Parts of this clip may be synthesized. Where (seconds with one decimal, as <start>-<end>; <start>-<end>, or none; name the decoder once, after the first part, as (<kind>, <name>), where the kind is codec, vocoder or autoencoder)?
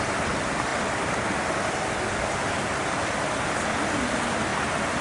none